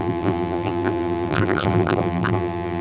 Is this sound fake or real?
fake